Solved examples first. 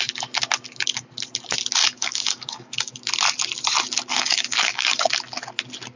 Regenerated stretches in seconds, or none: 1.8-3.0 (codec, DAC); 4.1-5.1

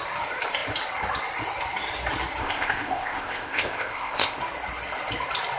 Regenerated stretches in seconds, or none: 2.4-4.4 (codec, ZipCodec)